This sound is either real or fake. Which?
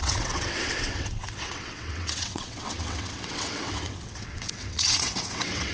fake